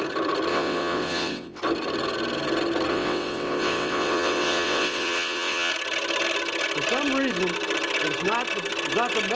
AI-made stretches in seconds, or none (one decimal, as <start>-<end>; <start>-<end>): 0.5-1.6; 2.9-5.7